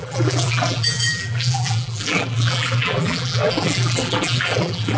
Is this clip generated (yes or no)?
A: yes